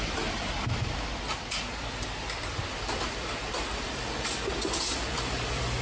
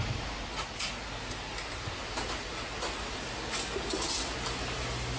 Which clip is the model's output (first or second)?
first